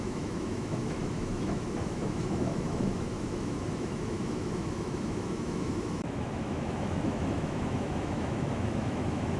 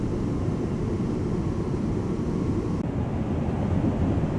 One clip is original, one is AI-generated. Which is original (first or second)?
second